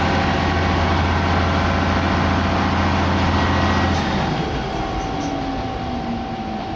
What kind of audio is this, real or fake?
real